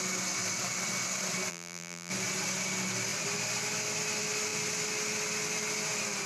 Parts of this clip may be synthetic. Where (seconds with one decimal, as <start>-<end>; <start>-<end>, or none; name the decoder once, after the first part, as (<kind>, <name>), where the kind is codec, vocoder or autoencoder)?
1.5-2.1 (vocoder, BigVGAN v2)